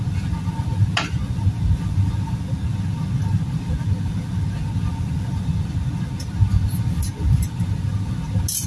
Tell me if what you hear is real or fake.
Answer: real